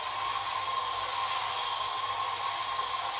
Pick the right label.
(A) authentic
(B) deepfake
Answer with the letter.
A